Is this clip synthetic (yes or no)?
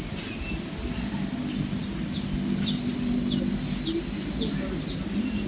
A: no